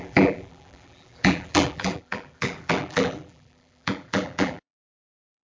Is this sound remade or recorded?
remade